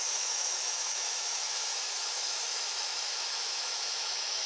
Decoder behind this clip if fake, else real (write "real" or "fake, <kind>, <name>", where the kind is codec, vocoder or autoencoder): fake, autoencoder, DAC-VAE